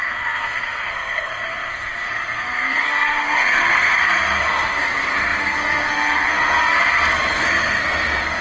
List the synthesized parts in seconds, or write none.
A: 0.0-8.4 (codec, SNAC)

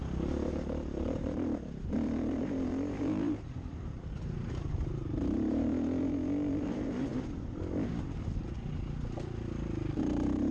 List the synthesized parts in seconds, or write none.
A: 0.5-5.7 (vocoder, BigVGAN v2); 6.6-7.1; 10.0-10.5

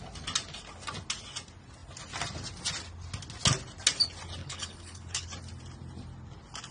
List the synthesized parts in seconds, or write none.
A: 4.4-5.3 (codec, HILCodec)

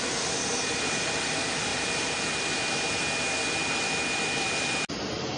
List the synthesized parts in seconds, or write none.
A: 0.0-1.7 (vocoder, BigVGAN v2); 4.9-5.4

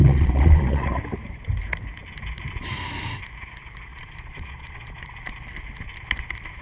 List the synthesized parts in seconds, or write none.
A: 0.0-1.0 (vocoder, Vocos); 3.9-5.0

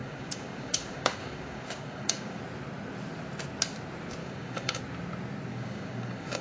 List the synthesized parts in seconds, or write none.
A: 0.0-2.4 (codec, DAC); 4.2-4.8; 5.5-6.4

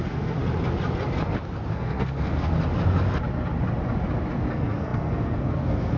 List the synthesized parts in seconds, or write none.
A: 0.0-0.4 (codec, SNAC); 1.7-2.5; 4.5-6.0

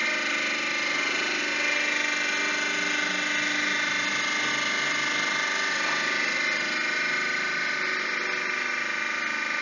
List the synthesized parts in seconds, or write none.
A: none